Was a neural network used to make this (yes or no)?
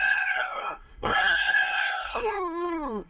yes